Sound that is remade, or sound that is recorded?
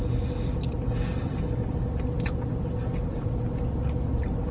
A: recorded